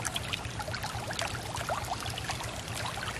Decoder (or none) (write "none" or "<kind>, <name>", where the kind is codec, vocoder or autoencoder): none